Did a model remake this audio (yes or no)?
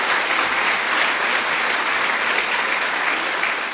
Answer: no